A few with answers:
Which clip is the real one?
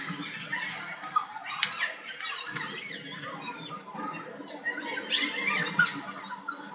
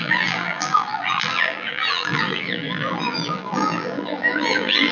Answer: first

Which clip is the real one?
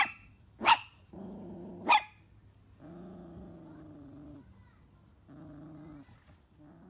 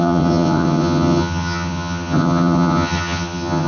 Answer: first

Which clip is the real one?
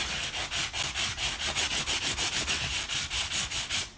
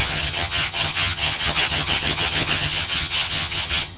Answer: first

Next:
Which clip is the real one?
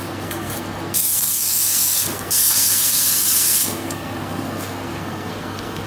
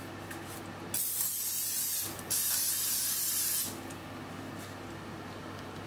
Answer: second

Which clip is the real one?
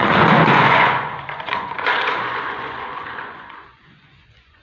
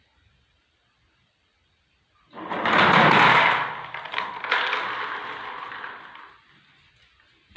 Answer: second